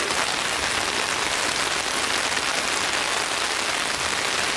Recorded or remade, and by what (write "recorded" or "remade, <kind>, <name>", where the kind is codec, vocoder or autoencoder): recorded